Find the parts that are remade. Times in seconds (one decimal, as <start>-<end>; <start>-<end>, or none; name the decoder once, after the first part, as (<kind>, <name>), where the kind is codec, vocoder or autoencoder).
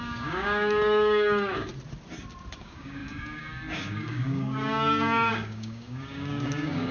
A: 0.0-1.7 (codec, DAC); 2.6-6.9